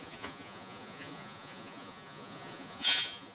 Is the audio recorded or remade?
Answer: remade